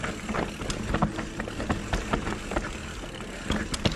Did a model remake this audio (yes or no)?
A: no